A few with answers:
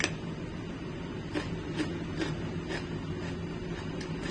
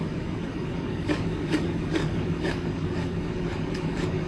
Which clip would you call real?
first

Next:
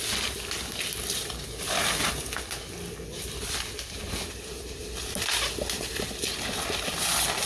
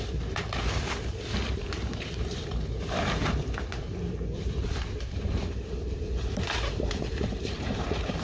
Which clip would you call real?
first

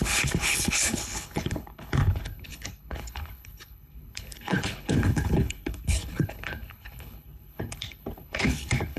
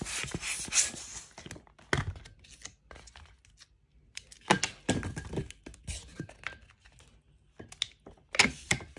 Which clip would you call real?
second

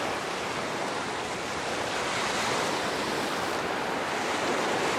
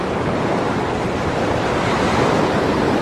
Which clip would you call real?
first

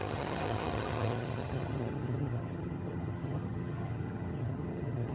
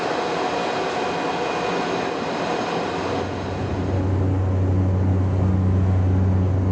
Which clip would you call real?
second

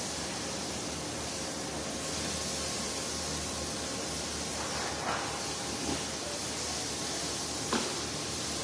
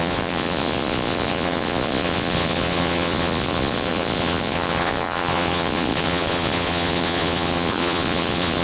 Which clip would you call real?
first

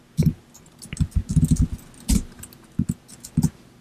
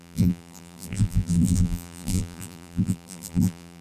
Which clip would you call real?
first